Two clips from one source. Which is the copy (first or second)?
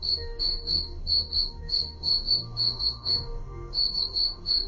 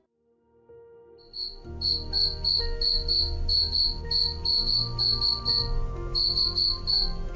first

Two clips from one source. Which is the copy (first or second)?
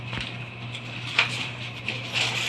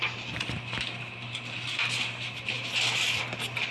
first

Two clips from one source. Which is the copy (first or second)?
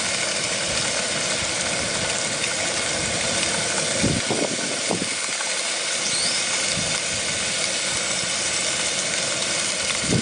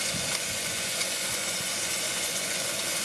second